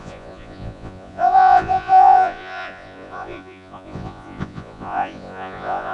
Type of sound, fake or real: fake